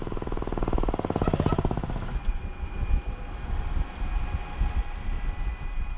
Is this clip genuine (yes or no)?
yes